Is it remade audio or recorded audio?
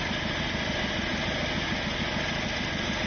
recorded